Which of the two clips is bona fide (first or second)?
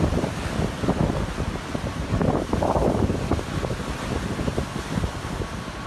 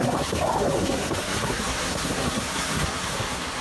first